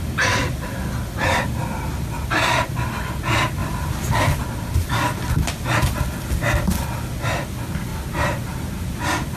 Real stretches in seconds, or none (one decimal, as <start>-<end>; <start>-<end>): 0.0-7.9